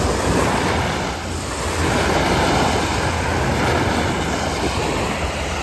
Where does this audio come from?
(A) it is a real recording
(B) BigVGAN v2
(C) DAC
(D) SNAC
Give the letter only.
A